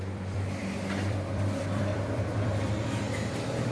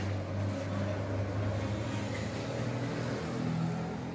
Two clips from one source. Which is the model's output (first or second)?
first